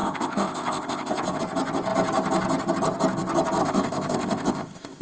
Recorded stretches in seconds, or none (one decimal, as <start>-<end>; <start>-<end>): 1.4-3.6